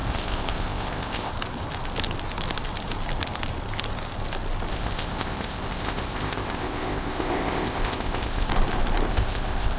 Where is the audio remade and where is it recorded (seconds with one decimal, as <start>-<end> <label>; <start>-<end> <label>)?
0.0-1.3 remade; 1.3-4.7 recorded; 4.7-8.5 remade; 8.5-9.1 recorded; 9.1-9.8 remade